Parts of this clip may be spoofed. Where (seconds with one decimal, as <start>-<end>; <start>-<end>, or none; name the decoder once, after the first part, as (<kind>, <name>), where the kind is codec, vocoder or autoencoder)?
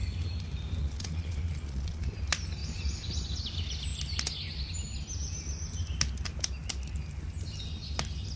0.8-2.1 (vocoder, Vocos)